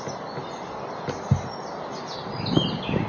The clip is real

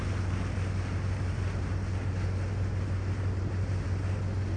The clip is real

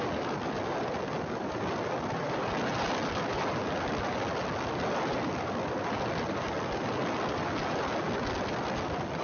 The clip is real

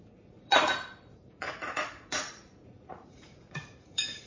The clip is fake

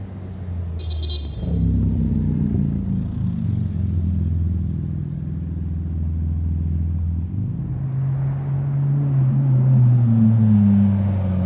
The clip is real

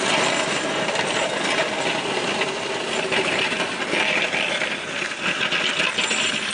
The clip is real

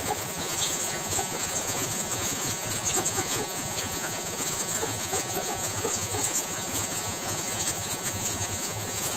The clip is fake